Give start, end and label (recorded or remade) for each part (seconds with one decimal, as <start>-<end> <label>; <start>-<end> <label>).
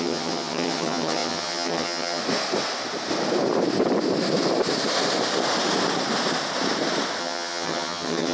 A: 0.0-2.2 remade; 2.2-7.2 recorded; 7.2-8.3 remade